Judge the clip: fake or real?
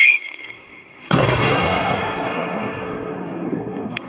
fake